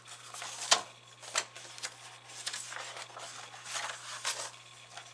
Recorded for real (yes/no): yes